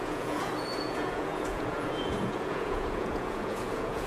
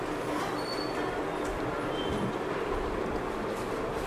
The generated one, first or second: first